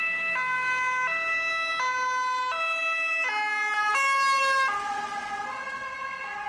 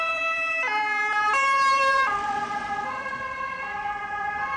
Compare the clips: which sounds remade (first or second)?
second